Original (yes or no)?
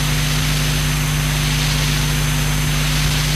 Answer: yes